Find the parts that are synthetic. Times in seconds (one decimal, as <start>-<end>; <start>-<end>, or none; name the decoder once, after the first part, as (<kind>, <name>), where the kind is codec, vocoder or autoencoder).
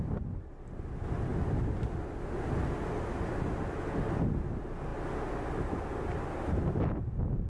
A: none